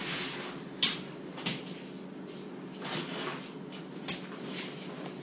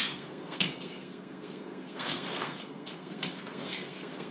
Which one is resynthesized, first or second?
second